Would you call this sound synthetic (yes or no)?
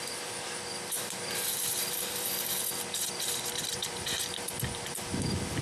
yes